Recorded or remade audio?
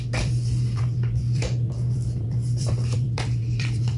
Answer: remade